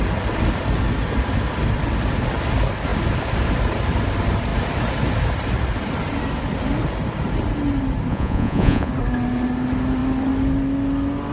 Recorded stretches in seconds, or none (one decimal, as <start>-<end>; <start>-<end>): 0.0-8.1; 8.9-11.3